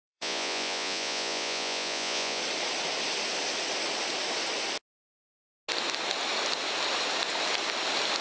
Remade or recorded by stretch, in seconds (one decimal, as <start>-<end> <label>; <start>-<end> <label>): 0.0-2.4 remade; 2.4-8.2 recorded